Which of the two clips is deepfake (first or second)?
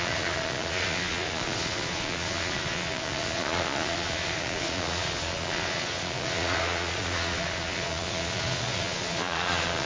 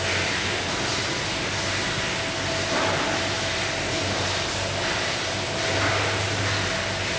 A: first